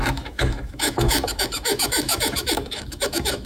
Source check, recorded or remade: remade